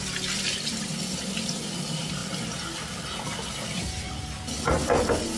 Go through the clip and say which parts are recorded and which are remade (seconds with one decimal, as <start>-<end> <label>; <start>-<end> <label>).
0.0-5.4 recorded